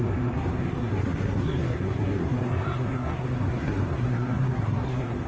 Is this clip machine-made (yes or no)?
yes